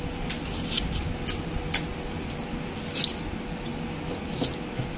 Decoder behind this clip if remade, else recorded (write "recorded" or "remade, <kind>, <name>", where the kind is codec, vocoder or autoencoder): recorded